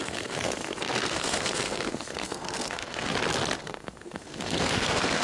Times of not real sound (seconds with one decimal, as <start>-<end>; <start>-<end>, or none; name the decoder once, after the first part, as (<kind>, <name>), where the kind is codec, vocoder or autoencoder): 0.0-3.1 (codec, SNAC); 3.6-5.2